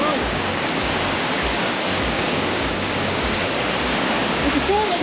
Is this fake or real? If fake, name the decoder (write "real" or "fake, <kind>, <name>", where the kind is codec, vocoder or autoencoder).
fake, codec, DAC